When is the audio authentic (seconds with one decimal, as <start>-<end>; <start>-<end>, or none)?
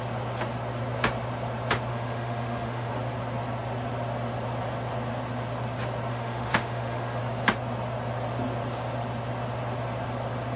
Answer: 0.0-1.9; 2.9-6.1; 7.2-10.6